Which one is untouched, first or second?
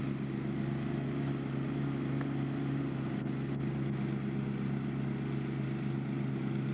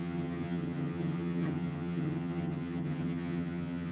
first